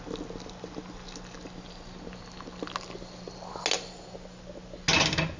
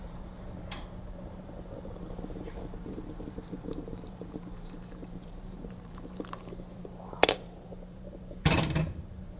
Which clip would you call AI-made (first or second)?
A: second